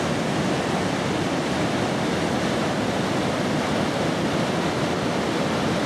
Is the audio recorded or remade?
recorded